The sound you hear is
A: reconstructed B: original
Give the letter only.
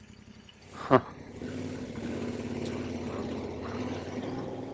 B